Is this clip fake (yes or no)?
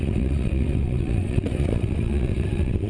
yes